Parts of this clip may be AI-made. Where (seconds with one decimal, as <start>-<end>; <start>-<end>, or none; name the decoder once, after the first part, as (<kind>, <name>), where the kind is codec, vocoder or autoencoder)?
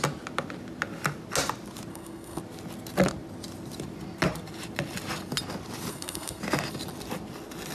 1.9-2.4 (codec, SNAC); 5.9-6.4